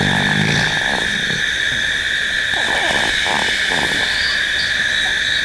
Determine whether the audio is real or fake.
real